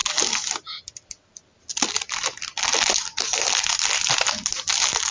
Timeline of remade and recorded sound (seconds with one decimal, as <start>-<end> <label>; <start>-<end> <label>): 0.0-5.1 recorded

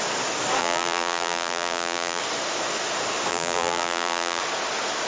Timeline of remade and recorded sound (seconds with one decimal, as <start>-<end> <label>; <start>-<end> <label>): 0.0-0.6 recorded; 0.6-2.2 remade; 2.2-3.3 recorded; 3.3-4.4 remade; 4.4-5.1 recorded